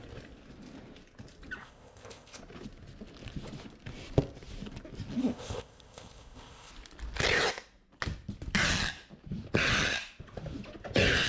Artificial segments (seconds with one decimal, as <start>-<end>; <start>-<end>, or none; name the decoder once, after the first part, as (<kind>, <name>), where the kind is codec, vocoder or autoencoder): 1.6-2.4 (codec, ZipCodec); 5.2-6.7